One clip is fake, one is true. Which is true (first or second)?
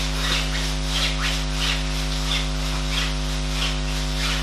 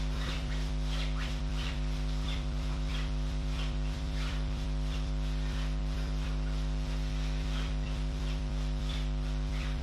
first